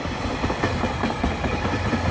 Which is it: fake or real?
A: real